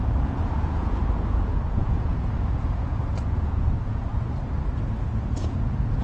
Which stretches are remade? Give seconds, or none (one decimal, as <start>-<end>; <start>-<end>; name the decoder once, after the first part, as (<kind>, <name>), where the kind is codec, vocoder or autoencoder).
0.0-4.1 (vocoder, Vocos); 5.4-6.0